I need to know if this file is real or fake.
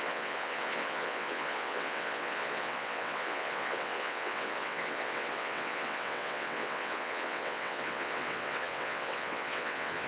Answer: fake